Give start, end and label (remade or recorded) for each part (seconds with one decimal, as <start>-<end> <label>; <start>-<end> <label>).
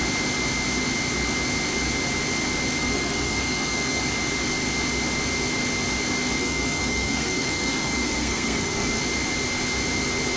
0.0-2.8 recorded; 2.8-4.0 remade; 4.0-6.4 recorded; 6.4-9.0 remade; 9.0-10.4 recorded